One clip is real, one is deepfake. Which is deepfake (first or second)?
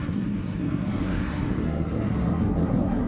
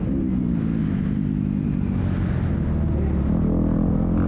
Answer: first